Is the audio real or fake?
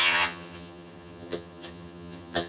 fake